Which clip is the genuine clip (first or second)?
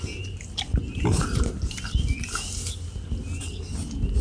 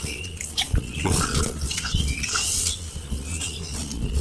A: first